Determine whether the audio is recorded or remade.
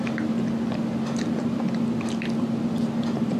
recorded